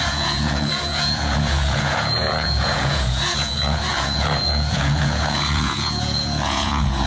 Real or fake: fake